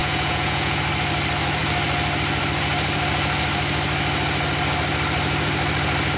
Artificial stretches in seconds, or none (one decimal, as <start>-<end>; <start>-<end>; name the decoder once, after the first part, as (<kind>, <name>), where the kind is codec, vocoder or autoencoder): 0.0-0.8 (vocoder, Vocos)